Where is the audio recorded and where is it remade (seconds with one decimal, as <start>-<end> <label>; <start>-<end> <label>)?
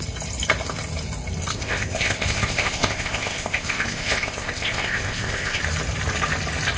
0.0-1.5 recorded; 1.5-5.6 remade; 5.6-6.8 recorded